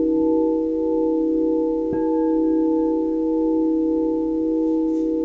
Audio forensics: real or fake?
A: fake